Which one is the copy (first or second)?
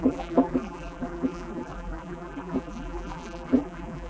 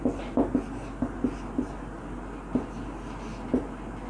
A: first